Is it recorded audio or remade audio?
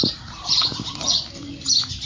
recorded